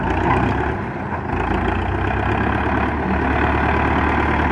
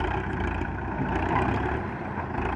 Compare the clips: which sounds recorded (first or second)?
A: first